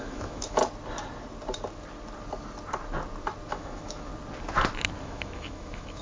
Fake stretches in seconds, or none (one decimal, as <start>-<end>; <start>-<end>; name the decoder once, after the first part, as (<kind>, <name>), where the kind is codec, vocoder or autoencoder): 0.0-0.6 (autoencoder, DAC-VAE); 3.5-4.1; 5.0-6.0